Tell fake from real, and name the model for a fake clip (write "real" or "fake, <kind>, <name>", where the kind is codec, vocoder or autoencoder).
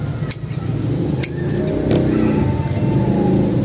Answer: real